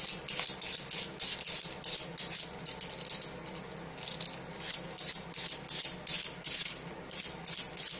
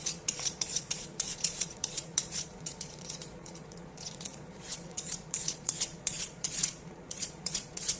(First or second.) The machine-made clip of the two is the second